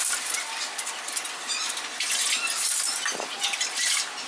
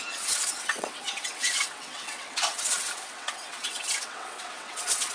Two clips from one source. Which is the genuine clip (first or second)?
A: first